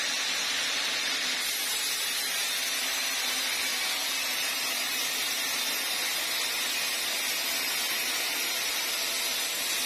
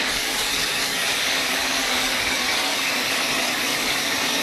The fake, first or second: second